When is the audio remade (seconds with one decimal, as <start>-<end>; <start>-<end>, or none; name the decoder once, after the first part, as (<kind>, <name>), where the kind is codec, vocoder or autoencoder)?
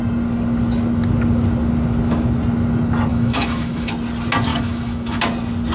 3.1-3.9 (autoencoder, DAC-VAE); 4.5-5.2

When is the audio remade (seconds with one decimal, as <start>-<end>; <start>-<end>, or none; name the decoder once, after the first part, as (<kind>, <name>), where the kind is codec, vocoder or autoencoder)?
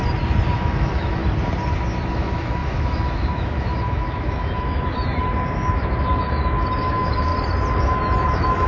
0.5-1.2 (autoencoder, DAC-VAE); 2.1-7.3; 7.8-8.7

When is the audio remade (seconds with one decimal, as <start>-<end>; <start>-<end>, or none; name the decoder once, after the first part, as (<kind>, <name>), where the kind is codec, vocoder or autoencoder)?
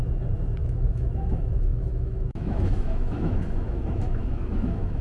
0.6-5.0 (autoencoder, DAC-VAE)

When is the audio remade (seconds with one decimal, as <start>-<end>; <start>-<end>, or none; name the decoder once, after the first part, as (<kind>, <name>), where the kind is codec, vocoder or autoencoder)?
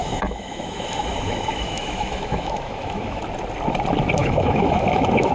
0.0-3.2 (autoencoder, DAC-VAE); 4.2-5.3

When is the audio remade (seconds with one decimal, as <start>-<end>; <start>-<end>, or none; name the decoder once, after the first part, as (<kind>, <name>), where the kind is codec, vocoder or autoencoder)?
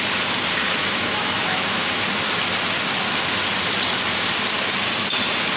0.8-1.9 (autoencoder, DAC-VAE)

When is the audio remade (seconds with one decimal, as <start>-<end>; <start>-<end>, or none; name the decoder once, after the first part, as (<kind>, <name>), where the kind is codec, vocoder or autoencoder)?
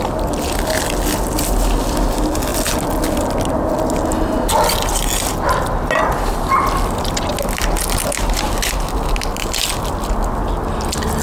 none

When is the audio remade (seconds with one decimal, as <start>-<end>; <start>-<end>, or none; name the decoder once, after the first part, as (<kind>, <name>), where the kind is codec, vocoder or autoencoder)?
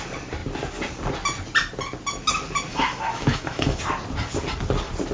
2.7-3.8 (autoencoder, DAC-VAE)